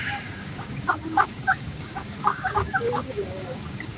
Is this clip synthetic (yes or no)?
yes